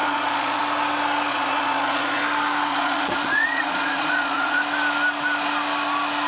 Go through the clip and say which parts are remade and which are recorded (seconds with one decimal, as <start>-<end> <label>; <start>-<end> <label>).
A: 0.0-0.6 remade; 0.6-1.3 recorded; 1.3-2.2 remade; 2.2-2.7 recorded; 2.7-4.6 remade; 4.6-6.3 recorded